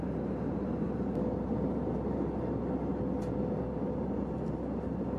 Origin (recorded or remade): recorded